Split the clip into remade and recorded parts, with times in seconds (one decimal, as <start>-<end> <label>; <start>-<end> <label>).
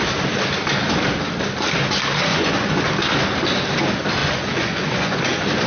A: 0.0-2.3 recorded; 2.3-2.8 remade; 2.8-4.2 recorded; 4.2-5.2 remade; 5.2-5.7 recorded